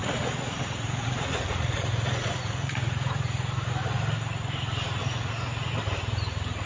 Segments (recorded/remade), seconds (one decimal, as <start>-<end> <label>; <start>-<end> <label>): 0.0-4.0 remade; 4.0-5.0 recorded; 5.0-5.7 remade; 5.7-6.7 recorded